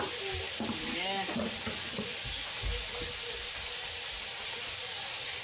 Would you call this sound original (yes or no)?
yes